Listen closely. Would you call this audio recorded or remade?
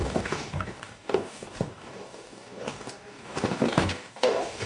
remade